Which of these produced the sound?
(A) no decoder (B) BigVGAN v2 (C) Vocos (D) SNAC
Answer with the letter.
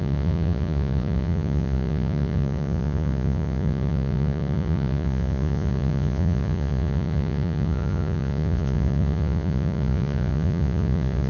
C